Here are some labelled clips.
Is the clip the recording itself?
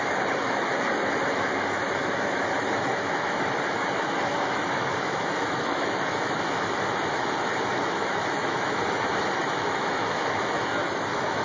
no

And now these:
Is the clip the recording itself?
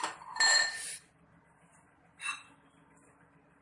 yes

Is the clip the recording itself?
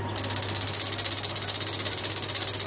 yes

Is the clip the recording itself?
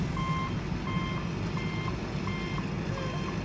yes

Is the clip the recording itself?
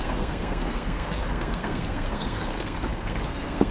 no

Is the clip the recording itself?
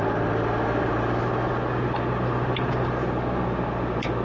yes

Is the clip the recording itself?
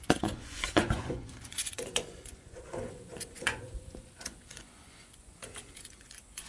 no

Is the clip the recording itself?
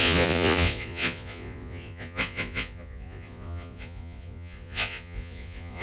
no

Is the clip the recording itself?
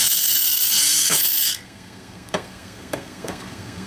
no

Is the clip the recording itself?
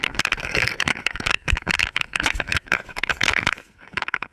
no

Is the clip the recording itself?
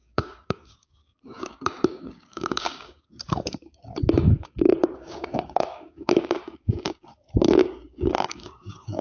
no